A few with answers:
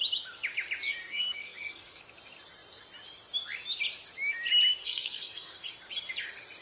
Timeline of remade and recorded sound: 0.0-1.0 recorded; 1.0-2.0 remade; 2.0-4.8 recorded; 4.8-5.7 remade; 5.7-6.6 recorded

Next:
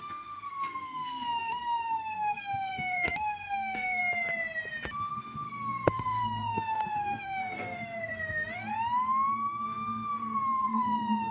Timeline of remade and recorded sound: 0.0-4.0 remade; 4.0-5.1 recorded; 5.1-8.7 remade; 8.7-9.3 recorded; 9.3-11.3 remade

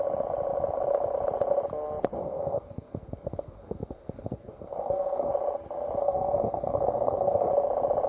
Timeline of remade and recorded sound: 0.0-2.2 recorded; 2.2-5.3 remade; 5.3-6.0 recorded; 6.0-7.5 remade; 7.5-8.1 recorded

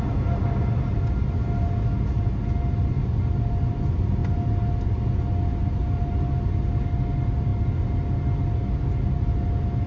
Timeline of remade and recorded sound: 0.0-9.9 recorded

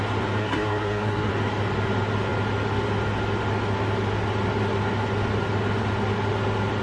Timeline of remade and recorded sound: 0.0-0.4 recorded; 0.4-1.3 remade; 1.3-6.8 recorded